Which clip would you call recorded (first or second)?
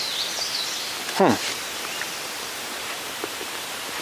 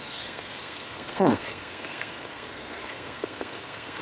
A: first